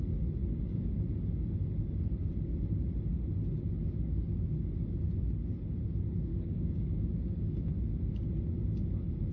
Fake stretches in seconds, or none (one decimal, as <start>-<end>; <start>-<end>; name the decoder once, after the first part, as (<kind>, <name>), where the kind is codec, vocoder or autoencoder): 0.4-0.9 (codec, DAC); 6.3-7.7